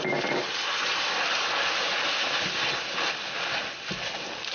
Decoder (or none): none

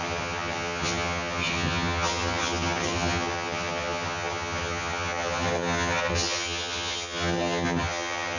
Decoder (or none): vocoder, HiFi-GAN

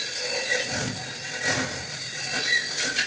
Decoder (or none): none